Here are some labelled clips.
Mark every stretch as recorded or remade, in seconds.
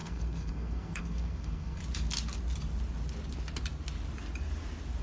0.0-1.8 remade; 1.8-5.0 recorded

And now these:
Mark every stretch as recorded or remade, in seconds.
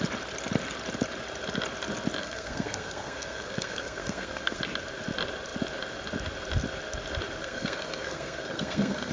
0.0-2.2 recorded; 2.2-4.6 remade; 4.6-7.4 recorded; 7.4-9.1 remade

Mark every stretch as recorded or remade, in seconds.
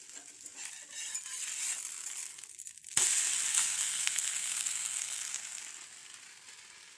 0.0-3.5 recorded; 3.5-5.6 remade; 5.6-7.0 recorded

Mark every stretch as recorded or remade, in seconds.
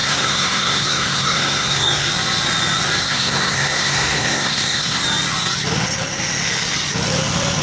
0.0-2.1 remade; 2.1-3.0 recorded; 3.0-5.0 remade; 5.0-7.6 recorded